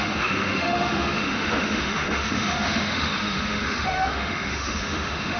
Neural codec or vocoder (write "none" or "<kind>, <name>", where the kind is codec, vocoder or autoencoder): autoencoder, DAC-VAE